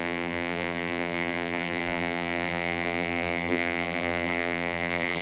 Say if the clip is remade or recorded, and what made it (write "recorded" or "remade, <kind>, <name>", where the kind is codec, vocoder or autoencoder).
remade, vocoder, BigVGAN v2